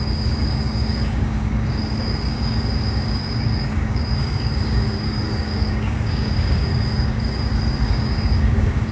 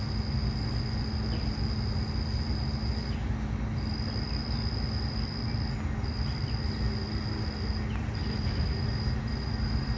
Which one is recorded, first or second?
second